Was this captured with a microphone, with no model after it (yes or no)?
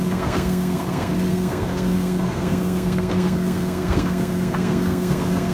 no